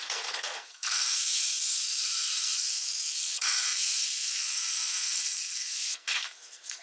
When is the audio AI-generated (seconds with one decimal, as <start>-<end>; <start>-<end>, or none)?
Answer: 0.0-6.8